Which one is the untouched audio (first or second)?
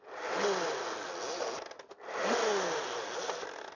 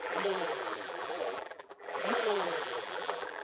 first